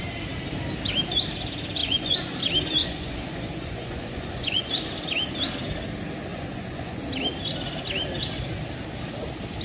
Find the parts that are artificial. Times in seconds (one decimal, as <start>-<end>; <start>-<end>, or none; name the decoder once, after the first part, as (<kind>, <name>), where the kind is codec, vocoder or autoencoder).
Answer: 1.8-2.4 (vocoder, Vocos); 2.8-4.7; 6.3-7.0